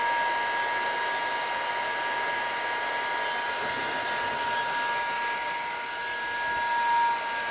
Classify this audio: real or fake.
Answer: real